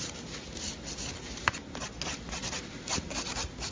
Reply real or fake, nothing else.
real